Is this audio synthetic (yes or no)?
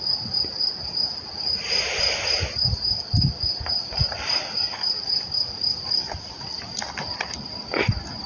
no